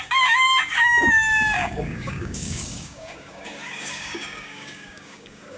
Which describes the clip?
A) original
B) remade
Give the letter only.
B